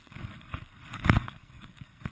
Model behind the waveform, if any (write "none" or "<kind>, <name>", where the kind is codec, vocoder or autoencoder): codec, SNAC